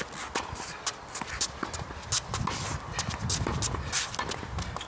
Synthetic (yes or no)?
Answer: no